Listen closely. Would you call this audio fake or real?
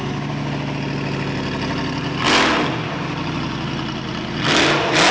real